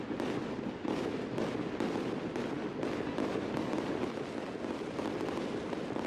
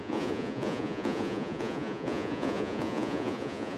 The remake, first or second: second